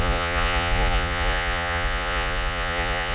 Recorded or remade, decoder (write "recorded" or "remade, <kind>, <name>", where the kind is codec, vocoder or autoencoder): remade, vocoder, Vocos